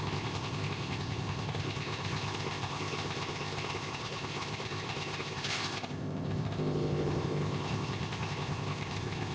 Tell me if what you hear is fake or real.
fake